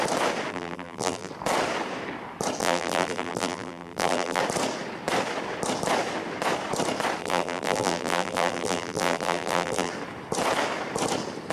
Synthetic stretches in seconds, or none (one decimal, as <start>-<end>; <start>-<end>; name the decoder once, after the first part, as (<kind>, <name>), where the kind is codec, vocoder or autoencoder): 0.5-1.3 (vocoder, BigVGAN v2); 2.6-4.4; 7.2-9.9